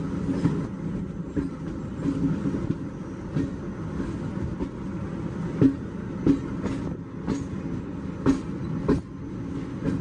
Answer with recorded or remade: recorded